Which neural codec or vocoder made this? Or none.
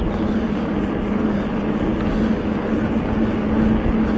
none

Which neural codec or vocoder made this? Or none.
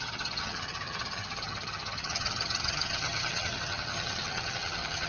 vocoder, HiFi-GAN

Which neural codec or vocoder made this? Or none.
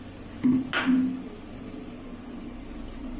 none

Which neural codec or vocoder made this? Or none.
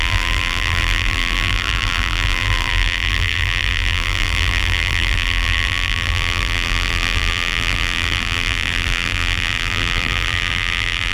vocoder, BigVGAN v2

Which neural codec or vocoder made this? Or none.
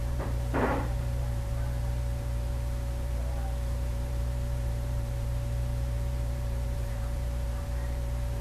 vocoder, BigVGAN v2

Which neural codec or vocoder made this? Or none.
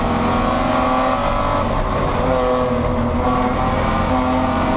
none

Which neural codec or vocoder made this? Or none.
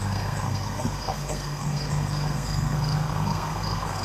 codec, SNAC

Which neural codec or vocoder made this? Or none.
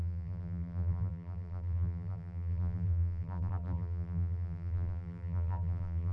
vocoder, BigVGAN v2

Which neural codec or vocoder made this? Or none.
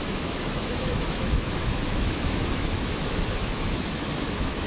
autoencoder, DAC-VAE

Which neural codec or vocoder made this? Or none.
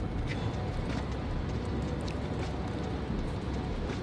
none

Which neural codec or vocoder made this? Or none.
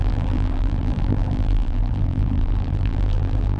vocoder, BigVGAN v2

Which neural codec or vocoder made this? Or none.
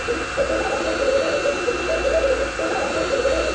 none